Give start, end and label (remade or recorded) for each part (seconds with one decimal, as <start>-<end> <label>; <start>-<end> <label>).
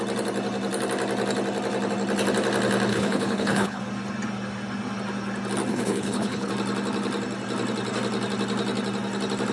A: 0.0-2.9 recorded; 2.9-3.8 remade; 3.8-5.7 recorded; 5.7-6.5 remade; 6.5-9.5 recorded